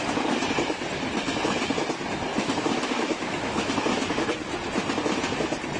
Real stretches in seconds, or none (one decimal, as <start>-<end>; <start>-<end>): 0.0-2.3; 4.0-5.8